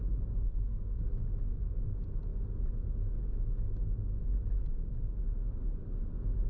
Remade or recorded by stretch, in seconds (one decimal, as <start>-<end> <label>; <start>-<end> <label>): 0.0-0.4 recorded; 0.4-1.0 remade; 1.0-6.5 recorded